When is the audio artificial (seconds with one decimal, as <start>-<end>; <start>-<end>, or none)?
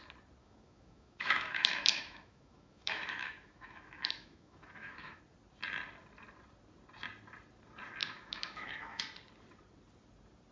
0.4-5.2; 8.0-9.0